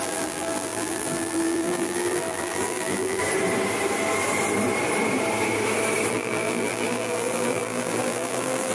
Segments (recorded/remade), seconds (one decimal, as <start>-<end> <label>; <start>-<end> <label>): 0.0-3.2 remade; 3.2-6.1 recorded; 6.1-8.7 remade